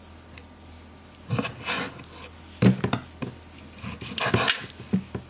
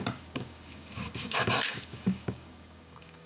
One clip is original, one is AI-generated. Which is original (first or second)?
first